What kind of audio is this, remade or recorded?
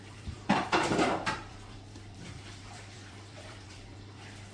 remade